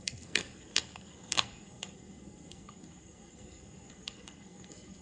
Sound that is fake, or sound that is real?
fake